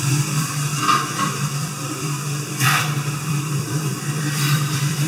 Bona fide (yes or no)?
no